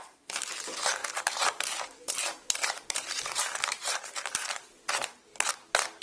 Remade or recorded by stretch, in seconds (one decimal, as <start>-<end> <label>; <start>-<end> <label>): 0.0-5.3 remade; 5.3-6.0 recorded